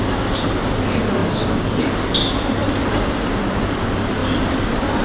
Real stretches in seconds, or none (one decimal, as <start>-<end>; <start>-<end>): 0.0-2.6; 3.1-4.2

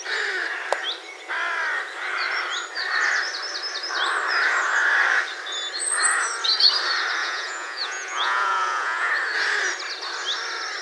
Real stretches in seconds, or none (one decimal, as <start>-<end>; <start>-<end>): 0.0-7.2; 9.1-10.8